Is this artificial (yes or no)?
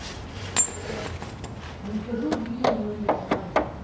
no